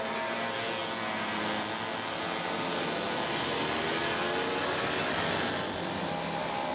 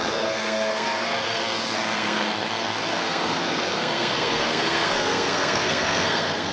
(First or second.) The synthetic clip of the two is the second